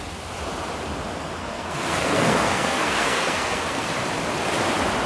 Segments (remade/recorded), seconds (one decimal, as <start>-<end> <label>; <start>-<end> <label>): 0.0-1.4 recorded; 1.4-3.9 remade; 3.9-5.1 recorded